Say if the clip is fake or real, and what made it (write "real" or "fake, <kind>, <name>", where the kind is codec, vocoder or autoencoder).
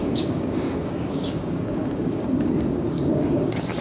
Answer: fake, codec, DAC